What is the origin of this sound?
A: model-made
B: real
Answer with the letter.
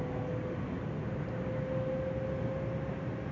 B